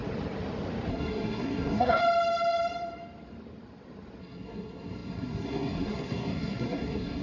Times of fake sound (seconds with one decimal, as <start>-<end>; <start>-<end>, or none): 0.9-2.0; 4.2-7.2